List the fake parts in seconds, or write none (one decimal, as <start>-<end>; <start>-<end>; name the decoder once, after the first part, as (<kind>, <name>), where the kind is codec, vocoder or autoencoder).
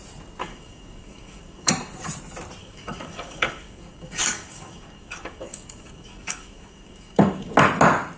0.4-1.7 (codec, DAC); 2.6-7.5